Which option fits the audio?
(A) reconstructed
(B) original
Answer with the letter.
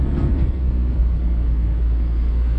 A